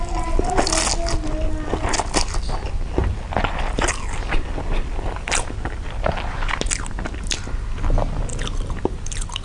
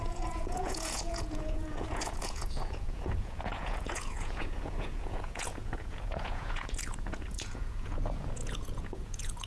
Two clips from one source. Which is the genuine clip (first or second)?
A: first